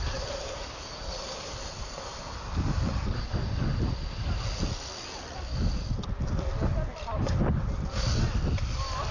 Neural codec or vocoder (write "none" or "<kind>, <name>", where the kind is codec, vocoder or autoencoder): none